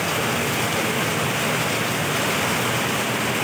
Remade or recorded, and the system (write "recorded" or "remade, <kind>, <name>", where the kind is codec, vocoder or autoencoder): recorded